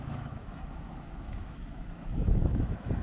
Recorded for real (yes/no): no